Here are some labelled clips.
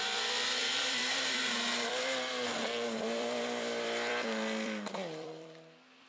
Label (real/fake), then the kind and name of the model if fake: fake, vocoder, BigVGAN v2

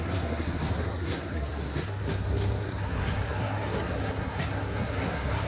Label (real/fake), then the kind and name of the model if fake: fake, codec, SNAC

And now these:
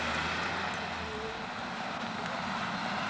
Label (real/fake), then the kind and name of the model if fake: real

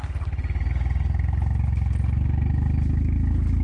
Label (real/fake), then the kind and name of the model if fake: real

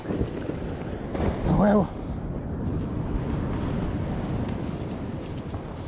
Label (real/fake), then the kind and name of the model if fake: real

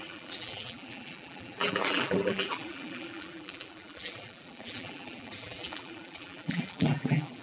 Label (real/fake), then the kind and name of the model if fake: fake, vocoder, BigVGAN v2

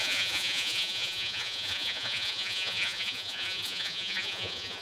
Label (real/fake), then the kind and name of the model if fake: fake, vocoder, Vocos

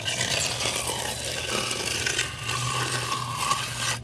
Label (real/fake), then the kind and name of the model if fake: real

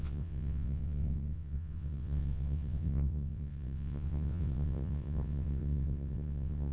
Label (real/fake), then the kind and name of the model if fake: fake, vocoder, WaveNeXt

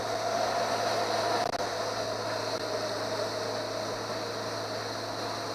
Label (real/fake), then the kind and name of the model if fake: real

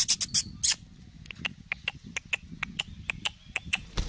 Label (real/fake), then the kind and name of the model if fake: real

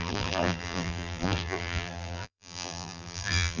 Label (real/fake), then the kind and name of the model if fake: fake, vocoder, BigVGAN v2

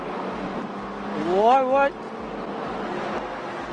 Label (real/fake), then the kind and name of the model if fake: real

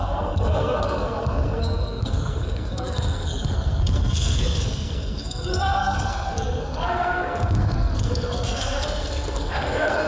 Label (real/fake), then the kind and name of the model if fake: fake, codec, SNAC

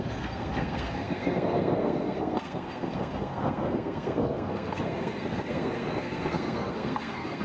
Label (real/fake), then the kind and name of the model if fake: fake, codec, SNAC